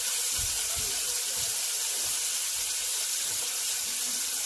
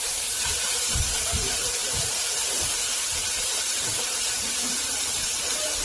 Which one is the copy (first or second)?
second